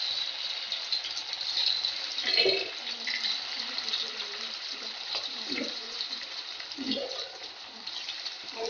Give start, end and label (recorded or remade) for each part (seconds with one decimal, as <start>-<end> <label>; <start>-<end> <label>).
0.0-4.0 recorded; 4.0-8.7 remade